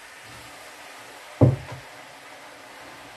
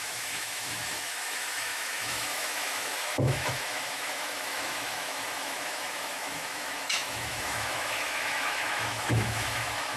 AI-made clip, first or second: second